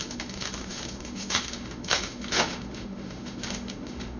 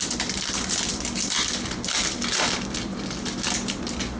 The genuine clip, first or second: second